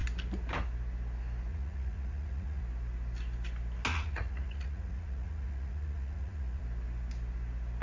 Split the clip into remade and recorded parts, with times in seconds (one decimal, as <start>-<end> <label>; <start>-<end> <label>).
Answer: 0.0-1.5 recorded; 1.5-2.6 remade; 2.6-3.9 recorded; 3.9-6.6 remade; 6.6-7.8 recorded